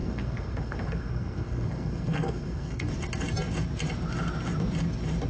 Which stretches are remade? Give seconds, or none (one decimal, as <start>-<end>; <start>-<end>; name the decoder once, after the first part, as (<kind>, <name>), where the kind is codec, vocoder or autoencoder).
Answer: 0.0-2.9 (codec, SNAC)